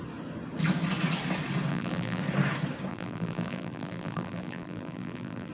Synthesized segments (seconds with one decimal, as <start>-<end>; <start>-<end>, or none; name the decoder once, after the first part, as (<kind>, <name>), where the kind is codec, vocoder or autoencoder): 1.7-2.2 (vocoder, BigVGAN v2); 2.9-5.5